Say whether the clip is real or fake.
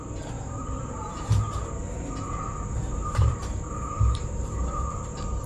fake